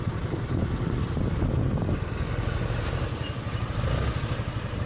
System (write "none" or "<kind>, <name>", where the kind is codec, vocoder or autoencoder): none